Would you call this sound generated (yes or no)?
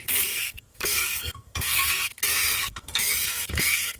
yes